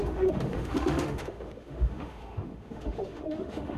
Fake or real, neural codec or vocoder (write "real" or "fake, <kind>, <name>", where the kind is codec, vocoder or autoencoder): fake, autoencoder, DAC-VAE